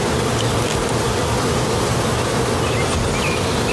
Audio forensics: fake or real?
real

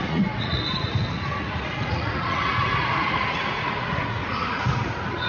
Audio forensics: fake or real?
fake